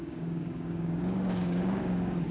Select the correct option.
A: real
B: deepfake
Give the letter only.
B